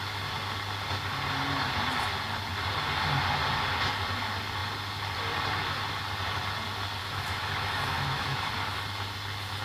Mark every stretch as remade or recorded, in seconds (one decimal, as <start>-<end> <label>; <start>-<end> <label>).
0.0-7.0 recorded; 7.0-8.5 remade; 8.5-9.6 recorded